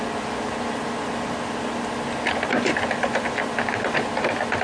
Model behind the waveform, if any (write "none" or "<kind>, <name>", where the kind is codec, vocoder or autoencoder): none